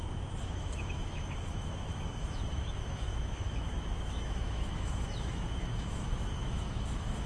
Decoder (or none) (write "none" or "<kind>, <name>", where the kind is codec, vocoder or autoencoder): autoencoder, DAC-VAE